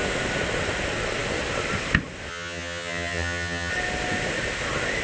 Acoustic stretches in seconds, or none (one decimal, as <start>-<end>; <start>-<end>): 0.0-2.3; 3.7-5.0